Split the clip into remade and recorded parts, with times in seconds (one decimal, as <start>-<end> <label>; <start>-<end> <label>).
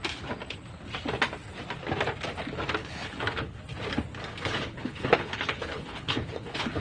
0.0-2.8 recorded; 2.8-3.6 remade; 3.6-4.3 recorded; 4.3-6.8 remade